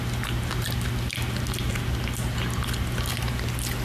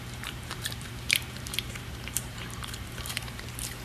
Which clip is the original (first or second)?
first